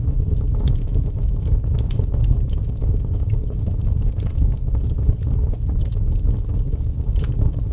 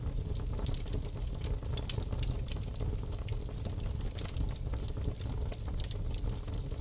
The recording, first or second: second